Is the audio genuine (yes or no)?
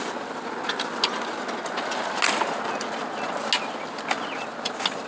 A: yes